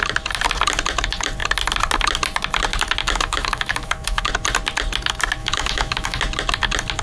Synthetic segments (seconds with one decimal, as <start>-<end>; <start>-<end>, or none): 3.0-4.3; 5.4-6.2